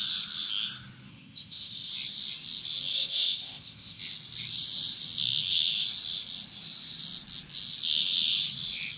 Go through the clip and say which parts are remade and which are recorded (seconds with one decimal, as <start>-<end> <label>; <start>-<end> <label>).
0.0-1.1 recorded; 1.1-1.9 remade; 1.9-2.9 recorded; 2.9-4.0 remade; 4.0-9.0 recorded